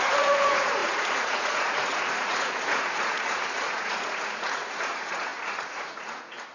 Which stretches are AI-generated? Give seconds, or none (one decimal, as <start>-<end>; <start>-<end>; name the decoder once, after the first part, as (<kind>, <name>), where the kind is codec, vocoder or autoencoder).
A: 0.0-6.5 (vocoder, Vocos)